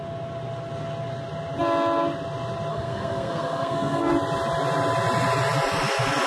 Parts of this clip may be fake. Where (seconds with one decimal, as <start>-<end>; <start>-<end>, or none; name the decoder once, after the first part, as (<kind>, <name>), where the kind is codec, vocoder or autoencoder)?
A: 2.7-4.1 (codec, SNAC)